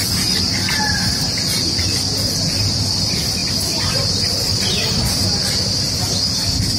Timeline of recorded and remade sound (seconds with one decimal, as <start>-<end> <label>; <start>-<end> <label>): 0.0-6.8 recorded